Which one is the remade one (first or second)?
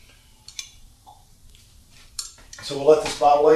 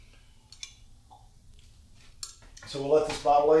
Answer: first